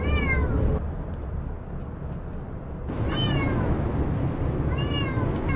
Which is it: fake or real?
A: real